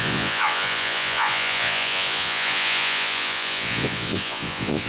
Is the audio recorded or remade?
remade